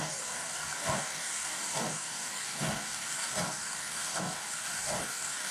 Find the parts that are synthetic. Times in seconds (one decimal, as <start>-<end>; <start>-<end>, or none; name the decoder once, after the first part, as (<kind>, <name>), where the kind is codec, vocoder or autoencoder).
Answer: 0.0-5.5 (codec, DAC)